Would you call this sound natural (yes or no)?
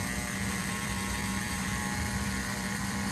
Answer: no